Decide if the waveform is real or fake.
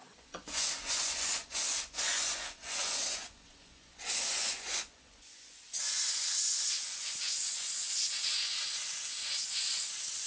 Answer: fake